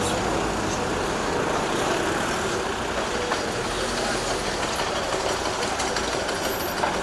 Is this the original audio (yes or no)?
yes